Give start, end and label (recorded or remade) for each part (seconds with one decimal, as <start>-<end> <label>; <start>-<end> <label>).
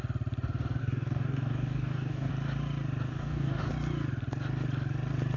0.0-0.8 recorded; 0.8-2.3 remade; 2.3-3.1 recorded; 3.1-3.6 remade; 3.6-5.4 recorded